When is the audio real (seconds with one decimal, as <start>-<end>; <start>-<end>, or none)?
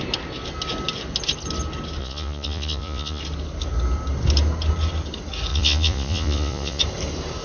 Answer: 0.0-2.0; 3.2-5.5; 6.8-7.4